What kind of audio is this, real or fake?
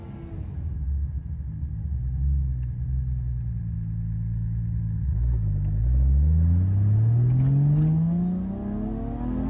real